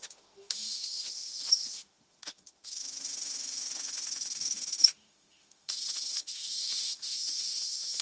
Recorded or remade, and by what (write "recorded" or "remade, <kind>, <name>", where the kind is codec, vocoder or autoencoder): remade, autoencoder, DAC-VAE